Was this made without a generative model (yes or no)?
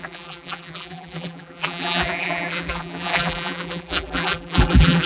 no